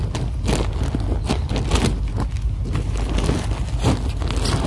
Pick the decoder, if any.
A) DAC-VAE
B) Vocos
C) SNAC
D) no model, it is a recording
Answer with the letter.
D